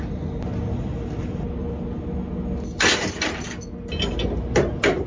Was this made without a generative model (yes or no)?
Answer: yes